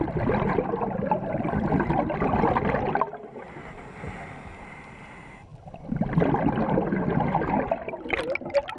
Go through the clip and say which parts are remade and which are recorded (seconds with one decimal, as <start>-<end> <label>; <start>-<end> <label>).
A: 0.0-8.8 recorded